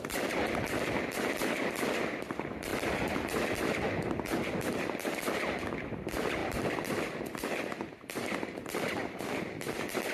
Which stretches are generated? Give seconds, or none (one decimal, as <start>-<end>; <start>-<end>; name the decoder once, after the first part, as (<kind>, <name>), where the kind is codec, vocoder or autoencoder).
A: none

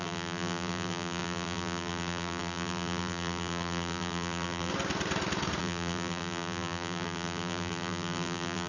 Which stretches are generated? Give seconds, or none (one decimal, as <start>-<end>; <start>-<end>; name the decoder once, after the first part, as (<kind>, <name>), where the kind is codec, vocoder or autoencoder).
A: 0.0-4.7 (vocoder, BigVGAN v2); 5.6-8.7